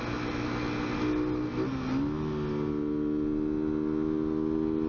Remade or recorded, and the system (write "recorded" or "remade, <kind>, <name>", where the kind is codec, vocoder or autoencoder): recorded